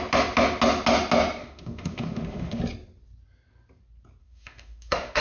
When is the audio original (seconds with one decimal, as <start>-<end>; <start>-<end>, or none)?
0.0-1.4; 2.6-4.2